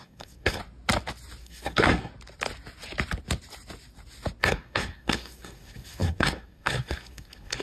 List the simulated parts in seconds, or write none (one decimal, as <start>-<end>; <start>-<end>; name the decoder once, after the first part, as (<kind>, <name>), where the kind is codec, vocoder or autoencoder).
0.0-0.6 (codec, SNAC); 1.4-2.1; 4.4-7.6